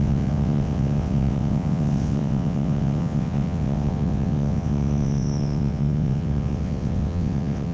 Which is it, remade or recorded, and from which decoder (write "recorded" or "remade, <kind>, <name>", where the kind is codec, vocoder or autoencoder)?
remade, vocoder, WaveNeXt